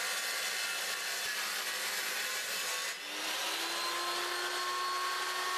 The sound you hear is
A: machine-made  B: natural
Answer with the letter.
B